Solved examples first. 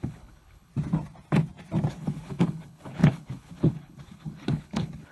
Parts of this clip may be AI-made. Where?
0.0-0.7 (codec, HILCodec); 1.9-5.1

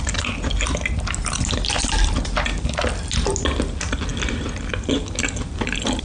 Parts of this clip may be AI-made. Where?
none

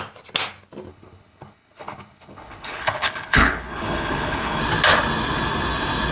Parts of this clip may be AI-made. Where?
0.9-4.6 (codec, HILCodec)

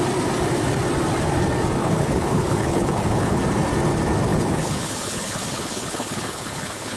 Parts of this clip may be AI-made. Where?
1.8-3.4 (codec, HILCodec); 4.3-7.0